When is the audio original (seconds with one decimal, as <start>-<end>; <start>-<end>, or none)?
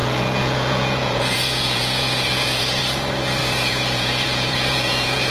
2.8-3.4